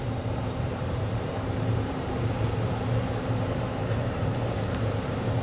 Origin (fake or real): fake